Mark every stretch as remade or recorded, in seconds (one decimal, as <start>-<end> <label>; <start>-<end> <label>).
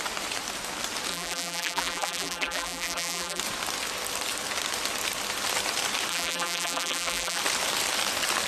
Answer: 0.0-1.1 recorded; 1.1-3.4 remade; 3.4-6.1 recorded; 6.1-7.4 remade; 7.4-8.5 recorded